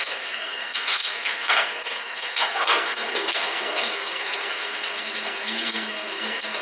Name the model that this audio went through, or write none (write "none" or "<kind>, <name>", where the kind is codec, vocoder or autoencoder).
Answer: codec, SNAC